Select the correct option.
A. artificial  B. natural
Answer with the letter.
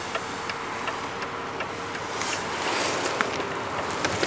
B